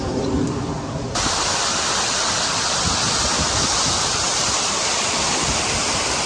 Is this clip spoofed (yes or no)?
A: yes